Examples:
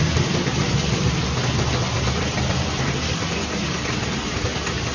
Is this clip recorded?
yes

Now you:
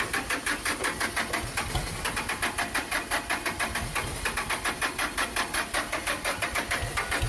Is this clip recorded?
yes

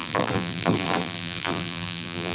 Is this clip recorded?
no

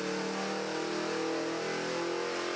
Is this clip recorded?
yes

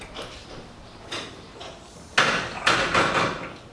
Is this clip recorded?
yes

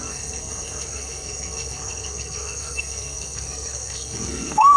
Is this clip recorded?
no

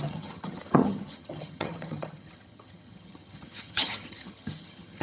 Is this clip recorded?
no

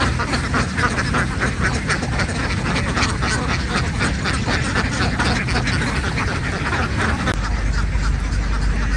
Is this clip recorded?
yes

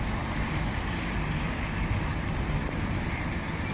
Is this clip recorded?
yes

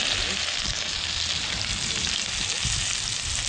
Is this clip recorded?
yes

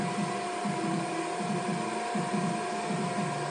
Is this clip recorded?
yes